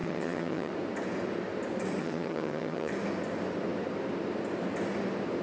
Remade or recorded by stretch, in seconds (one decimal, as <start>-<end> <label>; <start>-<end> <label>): 0.0-0.7 remade; 0.7-2.0 recorded; 2.0-2.9 remade; 2.9-5.4 recorded